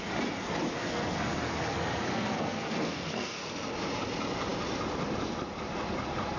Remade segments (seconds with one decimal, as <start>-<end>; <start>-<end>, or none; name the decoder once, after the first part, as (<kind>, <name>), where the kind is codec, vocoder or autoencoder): 0.8-3.4 (codec, SNAC)